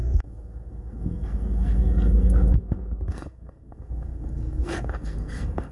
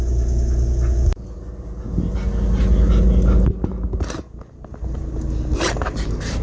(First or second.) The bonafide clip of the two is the second